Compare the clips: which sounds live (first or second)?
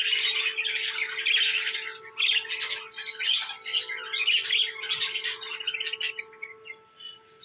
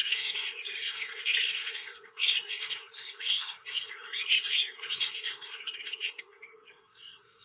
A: first